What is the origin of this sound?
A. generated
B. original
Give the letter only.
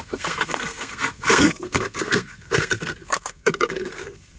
A